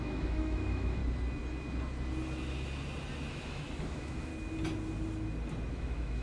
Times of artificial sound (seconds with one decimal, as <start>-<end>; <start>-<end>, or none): 0.0-1.0; 3.3-4.3; 5.7-6.2